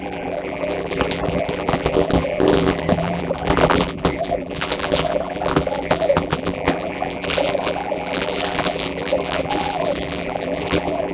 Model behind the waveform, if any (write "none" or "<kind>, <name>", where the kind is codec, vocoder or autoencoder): vocoder, BigVGAN v2